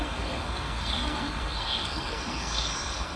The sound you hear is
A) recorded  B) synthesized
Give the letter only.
B